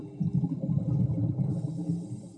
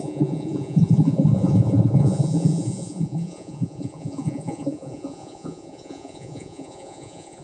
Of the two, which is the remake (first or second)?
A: second